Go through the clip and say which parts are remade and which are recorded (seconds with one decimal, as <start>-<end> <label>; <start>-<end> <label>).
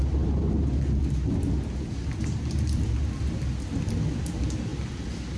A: 0.0-5.4 recorded